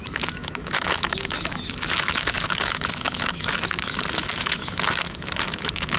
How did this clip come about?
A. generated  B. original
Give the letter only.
A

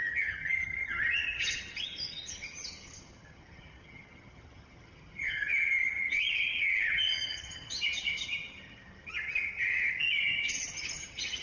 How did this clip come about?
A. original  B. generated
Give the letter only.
B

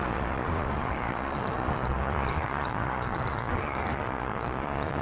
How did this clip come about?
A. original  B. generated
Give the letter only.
B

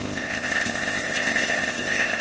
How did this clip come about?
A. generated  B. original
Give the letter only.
A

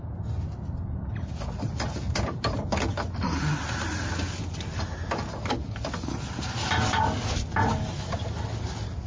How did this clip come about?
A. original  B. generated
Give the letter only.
A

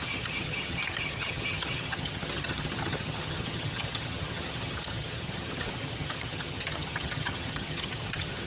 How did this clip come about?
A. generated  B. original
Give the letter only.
A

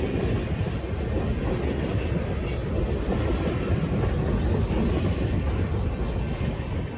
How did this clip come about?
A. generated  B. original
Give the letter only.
B